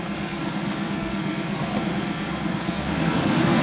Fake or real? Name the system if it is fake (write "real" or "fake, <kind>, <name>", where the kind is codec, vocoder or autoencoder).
fake, codec, SNAC